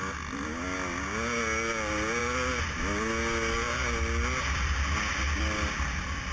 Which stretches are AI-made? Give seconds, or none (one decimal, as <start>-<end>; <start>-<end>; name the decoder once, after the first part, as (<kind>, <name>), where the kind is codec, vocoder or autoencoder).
none